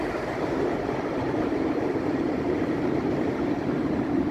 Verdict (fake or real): fake